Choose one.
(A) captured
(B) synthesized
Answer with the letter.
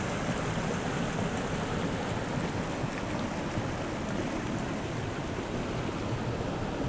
A